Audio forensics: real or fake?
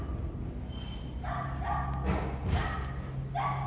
real